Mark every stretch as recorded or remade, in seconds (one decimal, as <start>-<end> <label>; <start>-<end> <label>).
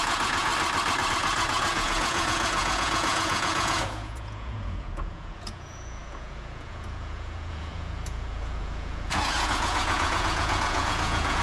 0.0-0.5 remade; 0.5-1.1 recorded; 1.1-11.4 remade